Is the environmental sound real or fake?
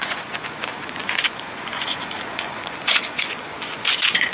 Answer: fake